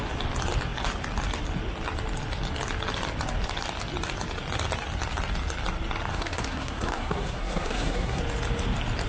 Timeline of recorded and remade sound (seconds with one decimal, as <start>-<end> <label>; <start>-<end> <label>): 0.0-6.1 recorded; 6.1-8.2 remade; 8.2-9.1 recorded